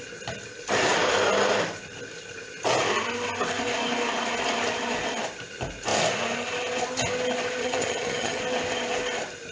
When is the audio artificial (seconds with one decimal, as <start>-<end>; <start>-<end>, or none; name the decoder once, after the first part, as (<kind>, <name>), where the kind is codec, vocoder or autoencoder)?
7.6-8.4 (vocoder, HiFi-GAN)